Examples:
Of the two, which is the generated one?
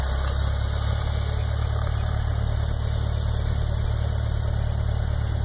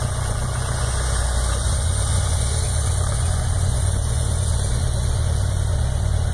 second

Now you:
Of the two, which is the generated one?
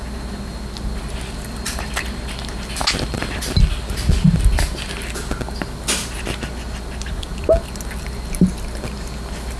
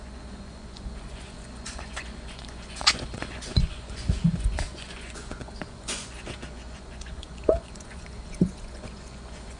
second